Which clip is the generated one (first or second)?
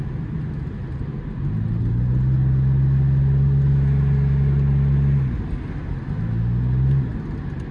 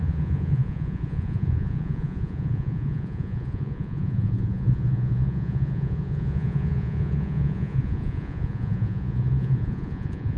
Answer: second